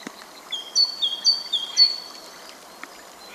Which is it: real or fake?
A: real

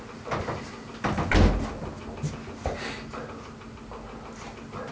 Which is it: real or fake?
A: real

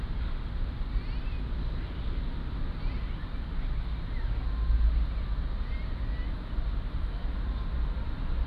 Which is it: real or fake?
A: real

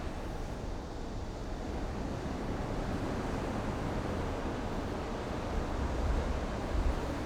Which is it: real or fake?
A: real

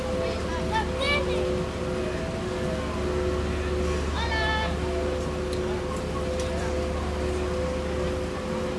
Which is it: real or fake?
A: real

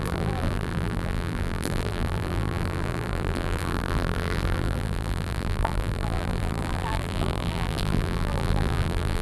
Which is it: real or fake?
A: fake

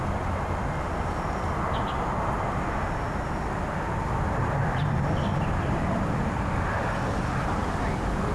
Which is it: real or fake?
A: real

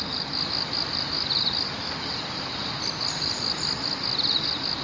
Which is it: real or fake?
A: fake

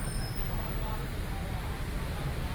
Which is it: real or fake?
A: real